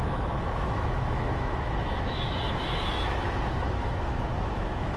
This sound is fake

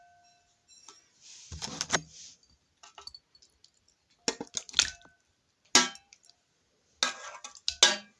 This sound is real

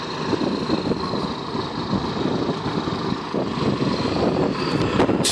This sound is real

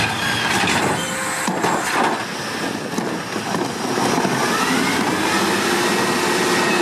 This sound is real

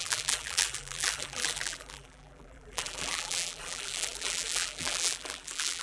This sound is fake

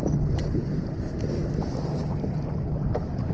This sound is real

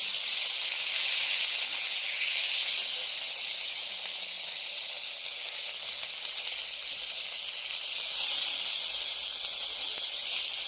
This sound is real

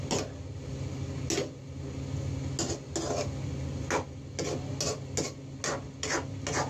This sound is real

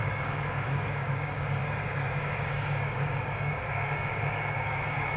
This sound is fake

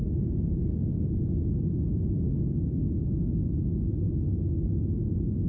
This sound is real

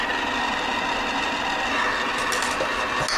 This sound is real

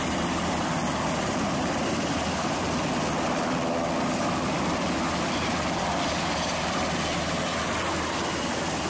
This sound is real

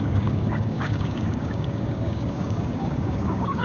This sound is fake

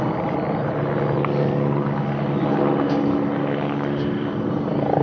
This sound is real